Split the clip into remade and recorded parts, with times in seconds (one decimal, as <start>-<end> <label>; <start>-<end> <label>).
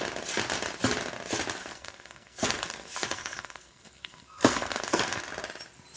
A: 0.0-1.6 recorded; 1.6-5.2 remade; 5.2-6.0 recorded